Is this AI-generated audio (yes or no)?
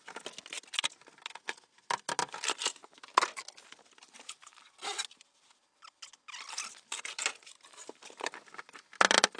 no